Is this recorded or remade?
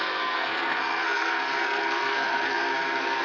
remade